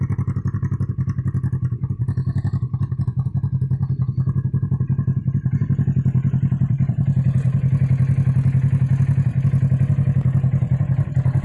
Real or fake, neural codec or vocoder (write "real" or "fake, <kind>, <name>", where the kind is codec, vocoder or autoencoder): real